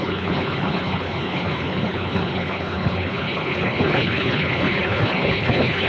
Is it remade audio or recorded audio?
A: remade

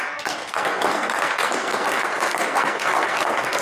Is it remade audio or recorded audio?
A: remade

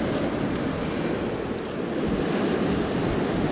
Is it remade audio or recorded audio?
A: recorded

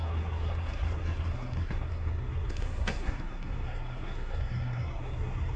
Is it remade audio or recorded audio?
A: remade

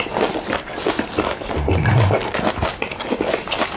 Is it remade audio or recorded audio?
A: recorded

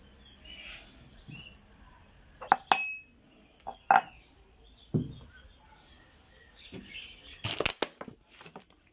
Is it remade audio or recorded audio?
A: recorded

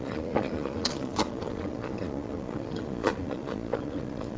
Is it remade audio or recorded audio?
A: remade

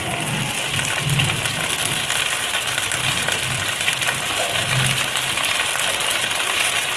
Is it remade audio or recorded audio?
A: recorded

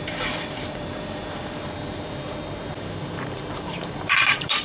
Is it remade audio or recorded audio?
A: remade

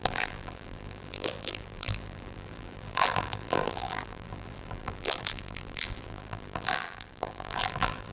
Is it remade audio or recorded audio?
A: remade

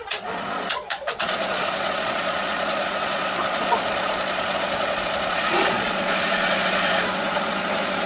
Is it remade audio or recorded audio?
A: remade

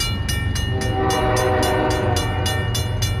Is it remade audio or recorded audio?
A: recorded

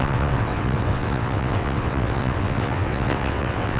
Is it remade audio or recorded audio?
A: remade